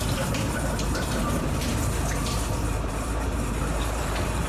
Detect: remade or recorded remade